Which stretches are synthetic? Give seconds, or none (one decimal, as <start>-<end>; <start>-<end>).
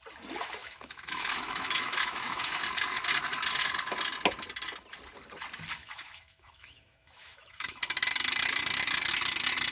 0.6-2.6; 5.8-7.8